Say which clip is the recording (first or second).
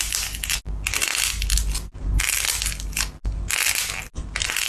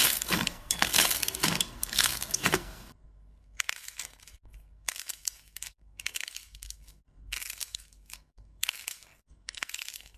first